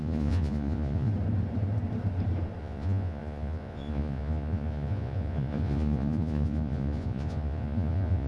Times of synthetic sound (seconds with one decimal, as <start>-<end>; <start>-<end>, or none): 0.0-1.1; 2.6-8.3